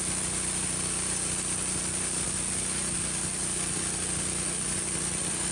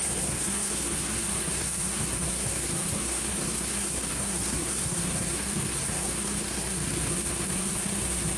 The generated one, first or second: second